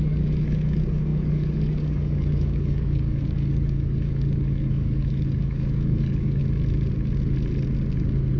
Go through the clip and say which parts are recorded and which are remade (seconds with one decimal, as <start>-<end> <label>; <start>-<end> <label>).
0.0-6.4 remade; 6.4-8.4 recorded